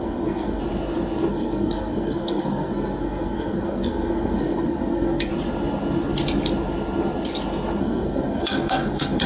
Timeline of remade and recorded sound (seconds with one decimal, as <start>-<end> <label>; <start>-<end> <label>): 0.0-0.6 remade; 0.6-1.3 recorded; 1.3-5.3 remade; 5.3-7.8 recorded; 7.8-9.3 remade